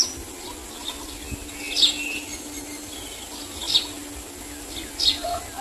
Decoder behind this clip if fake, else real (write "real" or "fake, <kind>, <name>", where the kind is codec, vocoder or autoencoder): real